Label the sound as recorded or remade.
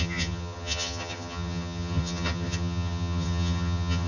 remade